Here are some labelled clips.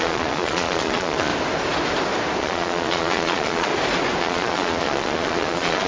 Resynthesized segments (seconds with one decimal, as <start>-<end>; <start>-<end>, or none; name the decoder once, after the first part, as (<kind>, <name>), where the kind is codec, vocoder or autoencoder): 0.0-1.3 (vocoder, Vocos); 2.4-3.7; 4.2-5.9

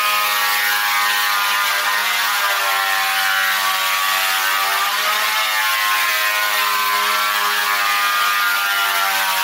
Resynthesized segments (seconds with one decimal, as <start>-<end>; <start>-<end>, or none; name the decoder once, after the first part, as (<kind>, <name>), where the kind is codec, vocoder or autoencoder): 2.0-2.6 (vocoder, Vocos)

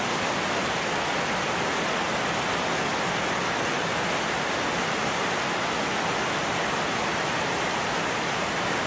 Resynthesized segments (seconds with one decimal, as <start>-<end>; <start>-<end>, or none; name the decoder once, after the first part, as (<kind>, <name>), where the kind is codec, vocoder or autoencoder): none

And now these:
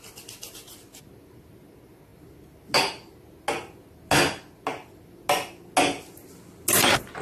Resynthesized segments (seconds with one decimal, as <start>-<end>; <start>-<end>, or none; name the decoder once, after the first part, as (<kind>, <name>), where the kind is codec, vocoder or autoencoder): none

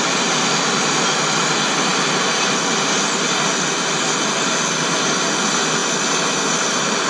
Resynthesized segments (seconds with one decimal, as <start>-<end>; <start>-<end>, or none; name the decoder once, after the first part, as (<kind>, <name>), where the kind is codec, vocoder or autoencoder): none